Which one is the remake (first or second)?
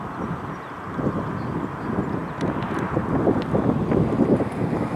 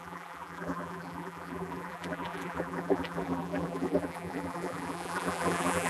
second